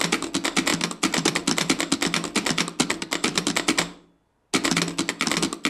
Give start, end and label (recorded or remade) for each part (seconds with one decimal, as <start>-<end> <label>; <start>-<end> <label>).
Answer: 0.0-0.7 recorded; 0.7-4.1 remade; 4.1-5.7 recorded